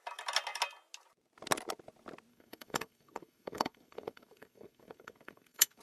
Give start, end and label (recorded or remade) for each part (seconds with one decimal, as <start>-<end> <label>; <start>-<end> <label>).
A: 0.0-2.3 recorded; 2.3-5.8 remade